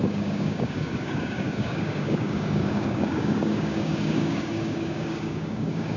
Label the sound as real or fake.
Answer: fake